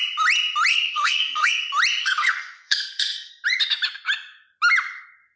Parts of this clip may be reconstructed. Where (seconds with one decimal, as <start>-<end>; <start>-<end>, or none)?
0.7-1.6; 2.0-3.3